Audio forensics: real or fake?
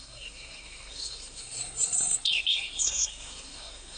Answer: fake